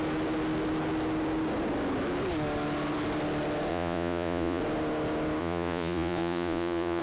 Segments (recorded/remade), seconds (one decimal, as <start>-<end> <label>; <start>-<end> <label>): 0.0-3.7 recorded; 3.7-4.6 remade; 4.6-5.4 recorded; 5.4-7.0 remade

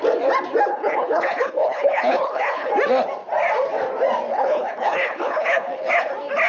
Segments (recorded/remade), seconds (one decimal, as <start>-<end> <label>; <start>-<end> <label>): 0.0-0.7 recorded; 0.7-2.7 remade; 2.7-4.3 recorded; 4.3-6.1 remade; 6.1-6.5 recorded

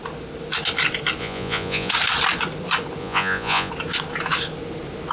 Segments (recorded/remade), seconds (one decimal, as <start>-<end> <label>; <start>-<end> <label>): 0.0-1.2 recorded; 1.2-1.9 remade; 1.9-3.0 recorded; 3.0-3.7 remade; 3.7-5.1 recorded